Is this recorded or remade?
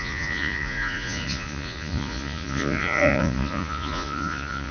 remade